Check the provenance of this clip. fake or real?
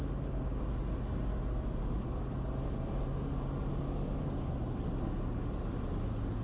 real